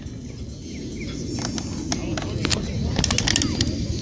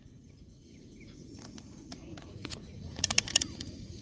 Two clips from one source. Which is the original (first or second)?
first